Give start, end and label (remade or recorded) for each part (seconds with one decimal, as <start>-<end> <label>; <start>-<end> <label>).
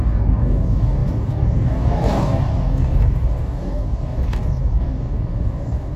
0.0-6.0 remade